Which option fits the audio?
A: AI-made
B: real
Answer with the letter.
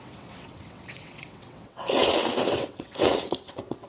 A